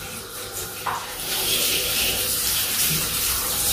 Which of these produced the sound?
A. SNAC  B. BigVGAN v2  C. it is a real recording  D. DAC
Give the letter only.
B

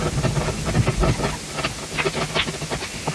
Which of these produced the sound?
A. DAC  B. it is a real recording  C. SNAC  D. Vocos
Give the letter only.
B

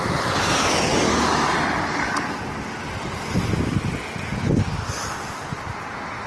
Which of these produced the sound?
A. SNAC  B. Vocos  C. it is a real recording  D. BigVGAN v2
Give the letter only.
C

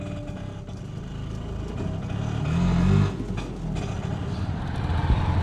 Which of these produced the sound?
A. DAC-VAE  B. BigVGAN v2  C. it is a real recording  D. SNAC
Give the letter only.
C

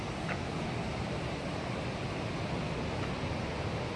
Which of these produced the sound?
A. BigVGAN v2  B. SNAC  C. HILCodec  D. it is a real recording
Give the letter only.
D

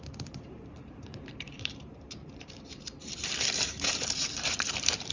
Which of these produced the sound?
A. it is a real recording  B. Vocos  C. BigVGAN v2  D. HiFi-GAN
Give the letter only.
C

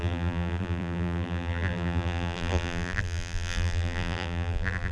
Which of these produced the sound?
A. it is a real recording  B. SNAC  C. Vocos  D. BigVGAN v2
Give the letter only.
D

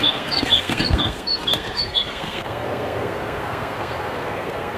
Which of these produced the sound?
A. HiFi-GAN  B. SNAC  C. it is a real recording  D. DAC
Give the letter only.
B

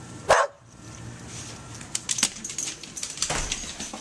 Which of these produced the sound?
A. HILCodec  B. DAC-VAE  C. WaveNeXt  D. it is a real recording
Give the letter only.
D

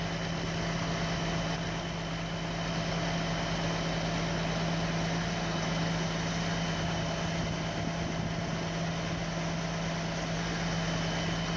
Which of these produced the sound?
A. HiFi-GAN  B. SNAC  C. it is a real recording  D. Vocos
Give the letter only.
C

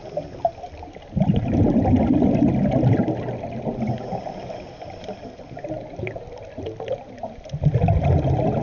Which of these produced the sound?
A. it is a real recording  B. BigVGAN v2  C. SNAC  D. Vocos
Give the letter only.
A